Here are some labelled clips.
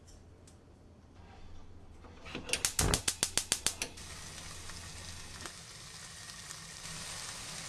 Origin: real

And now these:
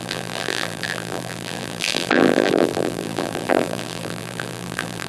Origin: fake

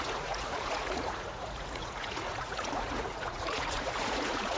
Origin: fake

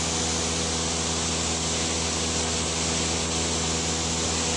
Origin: real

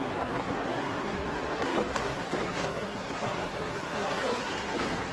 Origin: fake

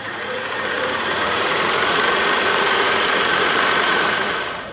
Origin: fake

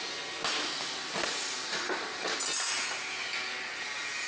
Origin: real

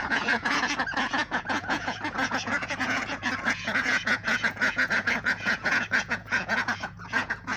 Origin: fake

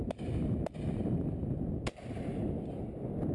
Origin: real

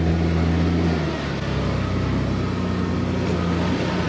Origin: real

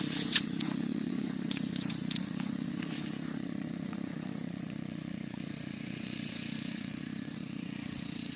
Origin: fake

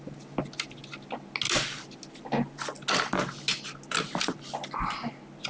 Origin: real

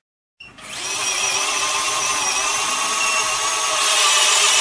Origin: real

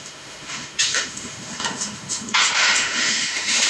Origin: fake